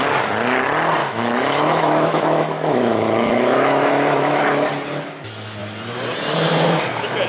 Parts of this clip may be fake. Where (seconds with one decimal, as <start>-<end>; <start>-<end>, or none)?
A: 1.0-4.4